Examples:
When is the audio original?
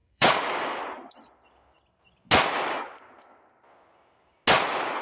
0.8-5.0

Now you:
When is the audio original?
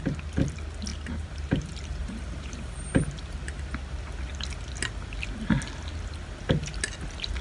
0.0-0.9; 1.5-2.0; 4.3-7.4